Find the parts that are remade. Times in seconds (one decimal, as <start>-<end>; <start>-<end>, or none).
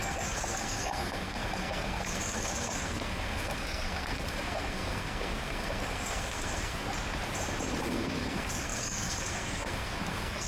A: 0.0-6.9; 7.9-10.5